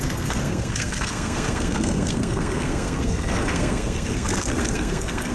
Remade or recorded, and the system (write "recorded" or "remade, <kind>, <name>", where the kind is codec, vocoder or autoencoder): remade, codec, SNAC